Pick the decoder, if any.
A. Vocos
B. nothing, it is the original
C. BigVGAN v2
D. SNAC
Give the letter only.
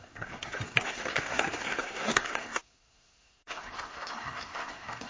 D